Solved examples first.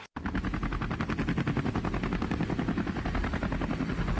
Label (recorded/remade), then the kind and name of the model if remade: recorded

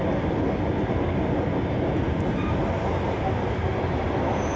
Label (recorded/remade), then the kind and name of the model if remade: recorded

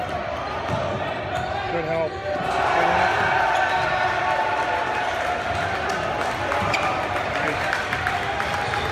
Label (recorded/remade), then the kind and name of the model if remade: recorded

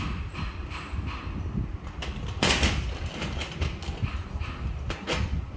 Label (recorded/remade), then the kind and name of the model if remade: recorded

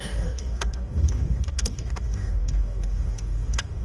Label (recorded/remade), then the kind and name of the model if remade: remade, codec, DAC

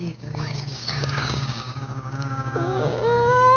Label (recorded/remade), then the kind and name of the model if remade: remade, codec, DAC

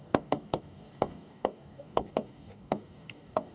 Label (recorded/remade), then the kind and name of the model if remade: remade, codec, DAC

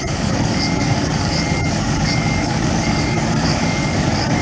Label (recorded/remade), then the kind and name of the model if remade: remade, codec, DAC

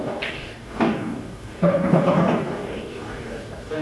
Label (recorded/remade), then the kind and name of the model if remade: remade, codec, DAC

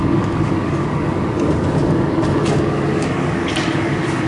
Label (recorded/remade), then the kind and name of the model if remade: remade, codec, DAC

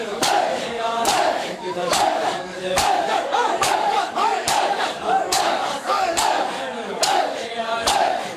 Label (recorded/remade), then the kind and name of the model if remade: remade, codec, DAC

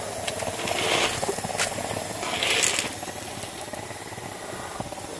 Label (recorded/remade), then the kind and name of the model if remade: recorded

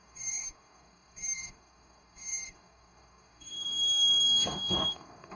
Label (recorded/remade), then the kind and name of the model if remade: remade, codec, DAC